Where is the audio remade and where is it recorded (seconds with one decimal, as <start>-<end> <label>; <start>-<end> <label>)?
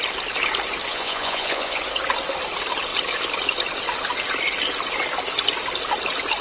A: 0.0-0.9 recorded; 0.9-1.8 remade; 1.8-6.4 recorded